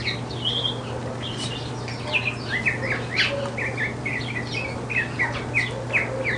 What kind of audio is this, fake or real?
real